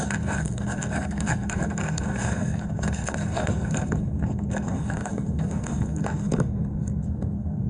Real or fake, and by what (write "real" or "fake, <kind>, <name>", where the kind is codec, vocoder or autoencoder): fake, codec, SNAC